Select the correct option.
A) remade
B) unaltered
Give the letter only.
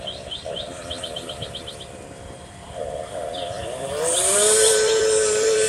A